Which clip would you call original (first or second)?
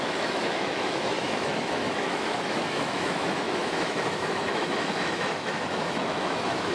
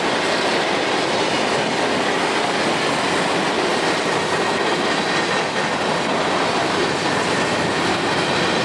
second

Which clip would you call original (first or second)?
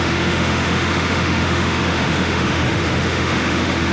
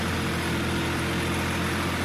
second